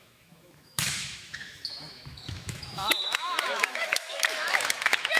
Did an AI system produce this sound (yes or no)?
yes